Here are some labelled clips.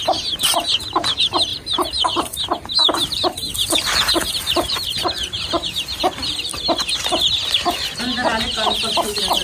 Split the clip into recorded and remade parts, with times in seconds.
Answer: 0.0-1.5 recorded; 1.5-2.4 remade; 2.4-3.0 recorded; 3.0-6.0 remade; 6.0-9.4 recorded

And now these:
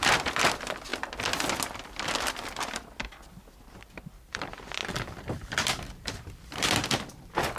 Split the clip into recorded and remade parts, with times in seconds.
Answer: 0.0-0.9 remade; 0.9-4.3 recorded; 4.3-7.6 remade